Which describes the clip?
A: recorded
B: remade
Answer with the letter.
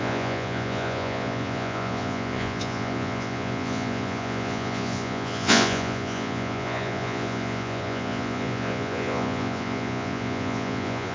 B